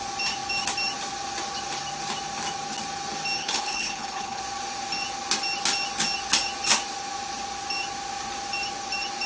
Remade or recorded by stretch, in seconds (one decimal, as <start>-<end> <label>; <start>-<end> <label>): 0.0-3.4 recorded; 3.4-4.4 remade; 4.4-9.3 recorded

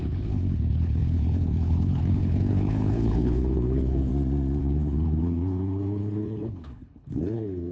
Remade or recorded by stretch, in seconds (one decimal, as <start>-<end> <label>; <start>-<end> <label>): 0.0-4.1 remade; 4.1-4.6 recorded; 4.6-7.7 remade